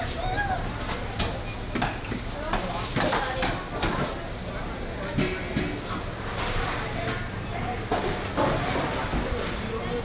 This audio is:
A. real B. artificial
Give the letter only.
A